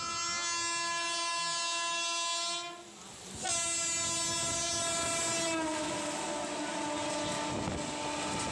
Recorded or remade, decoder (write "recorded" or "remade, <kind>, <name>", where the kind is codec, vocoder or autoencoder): recorded